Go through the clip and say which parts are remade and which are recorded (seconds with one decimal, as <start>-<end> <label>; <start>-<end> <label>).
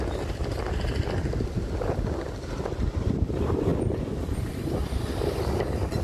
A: 0.0-6.0 recorded